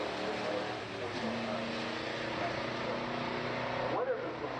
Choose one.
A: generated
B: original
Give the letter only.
B